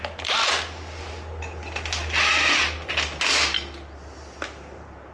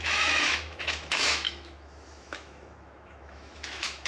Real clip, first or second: first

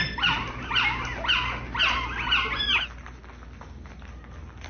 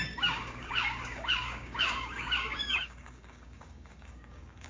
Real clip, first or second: first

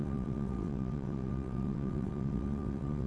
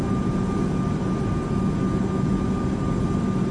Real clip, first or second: second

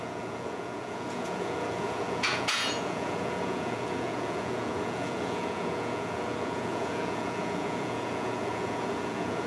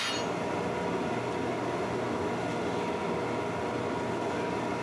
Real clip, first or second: second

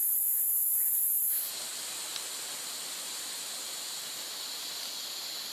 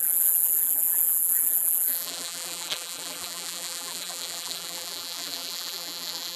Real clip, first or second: first